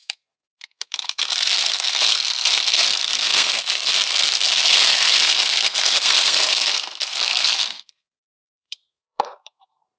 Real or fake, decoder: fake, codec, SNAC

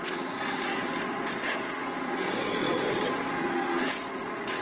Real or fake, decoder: fake, vocoder, Vocos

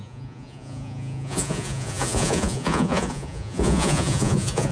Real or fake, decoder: fake, vocoder, Vocos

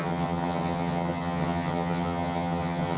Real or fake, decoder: fake, vocoder, HiFi-GAN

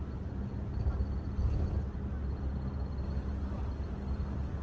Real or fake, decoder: real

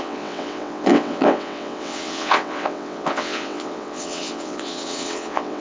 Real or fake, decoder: fake, vocoder, WaveNeXt